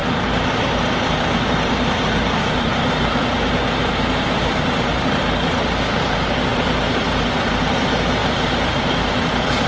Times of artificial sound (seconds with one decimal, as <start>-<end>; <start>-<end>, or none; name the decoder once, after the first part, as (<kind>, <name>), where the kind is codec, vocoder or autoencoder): 0.5-8.2 (vocoder, BigVGAN v2); 8.7-9.7